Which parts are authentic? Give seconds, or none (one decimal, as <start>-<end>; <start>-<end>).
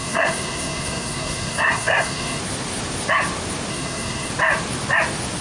2.4-3.7; 4.3-5.4